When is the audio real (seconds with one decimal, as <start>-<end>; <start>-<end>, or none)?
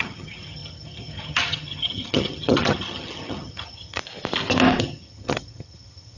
4.0-4.8